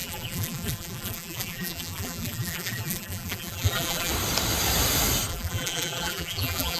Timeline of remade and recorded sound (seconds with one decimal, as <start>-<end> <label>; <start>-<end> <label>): 0.0-4.1 remade; 4.1-5.3 recorded; 5.3-6.8 remade